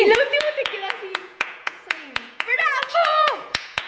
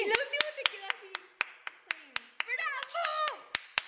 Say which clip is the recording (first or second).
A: second